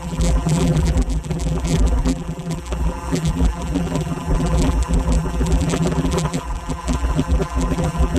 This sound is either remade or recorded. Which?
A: remade